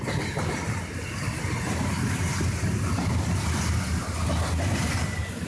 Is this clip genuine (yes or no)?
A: yes